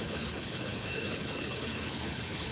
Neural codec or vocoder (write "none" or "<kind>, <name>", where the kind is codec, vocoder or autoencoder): codec, HILCodec